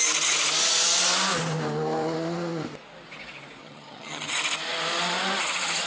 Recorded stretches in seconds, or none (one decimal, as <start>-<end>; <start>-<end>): 0.0-3.6; 4.3-5.9